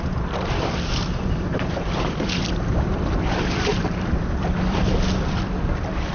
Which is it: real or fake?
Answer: fake